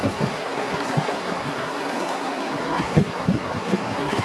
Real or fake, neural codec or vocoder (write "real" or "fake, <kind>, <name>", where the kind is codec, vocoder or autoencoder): fake, codec, SNAC